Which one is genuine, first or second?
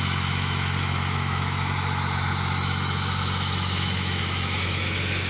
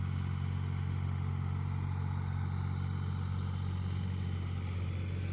second